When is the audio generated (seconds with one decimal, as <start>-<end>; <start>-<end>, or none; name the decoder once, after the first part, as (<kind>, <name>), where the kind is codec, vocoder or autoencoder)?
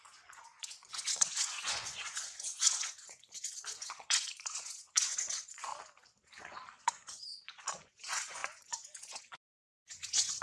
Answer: 0.0-5.7 (vocoder, Vocos); 6.8-10.4